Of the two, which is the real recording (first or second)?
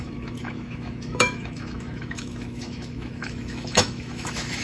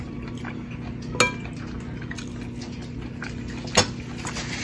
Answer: second